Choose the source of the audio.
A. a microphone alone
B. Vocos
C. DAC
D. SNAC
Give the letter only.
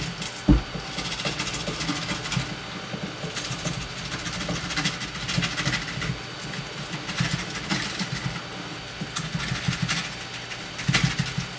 A